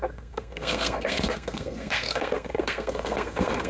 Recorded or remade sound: remade